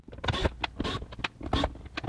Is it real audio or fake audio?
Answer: real